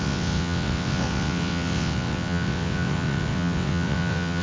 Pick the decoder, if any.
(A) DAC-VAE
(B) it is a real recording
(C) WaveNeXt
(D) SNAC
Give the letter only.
C